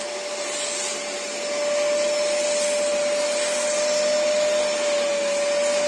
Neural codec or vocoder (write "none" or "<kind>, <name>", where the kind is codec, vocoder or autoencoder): none